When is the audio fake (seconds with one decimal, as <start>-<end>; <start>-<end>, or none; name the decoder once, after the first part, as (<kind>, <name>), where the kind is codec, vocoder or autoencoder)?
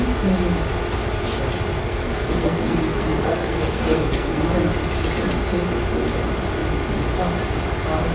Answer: 1.8-4.4 (codec, SNAC)